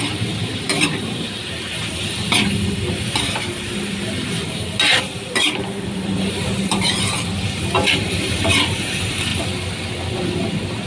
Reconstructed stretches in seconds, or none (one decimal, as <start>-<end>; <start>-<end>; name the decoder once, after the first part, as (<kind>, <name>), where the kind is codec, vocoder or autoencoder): 0.0-9.3 (vocoder, BigVGAN v2)